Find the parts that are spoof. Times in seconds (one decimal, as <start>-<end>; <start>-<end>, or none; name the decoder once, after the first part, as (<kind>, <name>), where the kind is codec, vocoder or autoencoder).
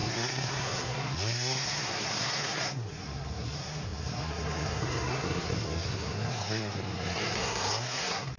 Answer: 0.0-8.4 (codec, SNAC)